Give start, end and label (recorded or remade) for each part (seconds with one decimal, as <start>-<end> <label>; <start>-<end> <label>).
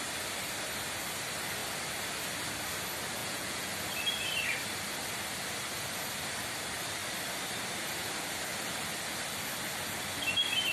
0.0-3.2 recorded; 3.2-3.7 remade; 3.7-10.7 recorded